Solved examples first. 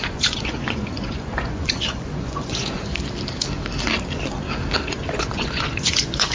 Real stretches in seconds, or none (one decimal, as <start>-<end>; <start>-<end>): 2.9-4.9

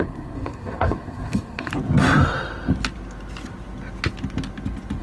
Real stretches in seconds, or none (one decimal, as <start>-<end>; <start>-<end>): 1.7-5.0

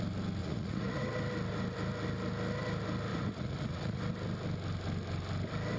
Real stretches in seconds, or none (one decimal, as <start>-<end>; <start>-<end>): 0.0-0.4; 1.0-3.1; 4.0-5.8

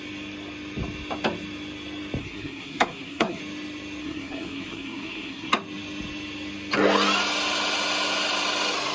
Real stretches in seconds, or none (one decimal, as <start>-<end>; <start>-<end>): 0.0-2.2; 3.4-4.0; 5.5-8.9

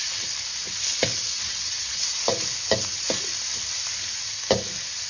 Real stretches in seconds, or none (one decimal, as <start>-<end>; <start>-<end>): 0.0-1.2; 2.0-5.1